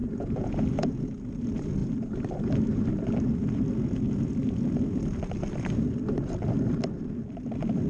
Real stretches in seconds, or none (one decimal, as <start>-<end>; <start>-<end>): 1.2-7.9